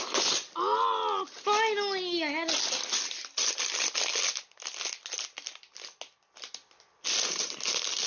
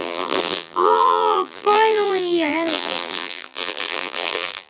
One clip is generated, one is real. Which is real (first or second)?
first